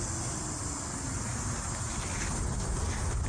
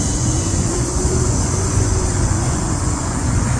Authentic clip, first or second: first